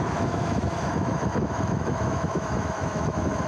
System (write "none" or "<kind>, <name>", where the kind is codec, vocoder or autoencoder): autoencoder, DAC-VAE